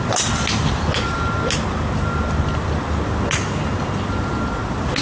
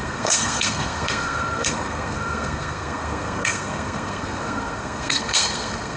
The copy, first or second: second